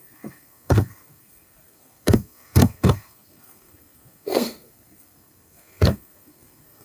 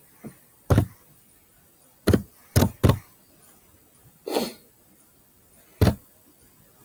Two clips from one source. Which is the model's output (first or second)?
first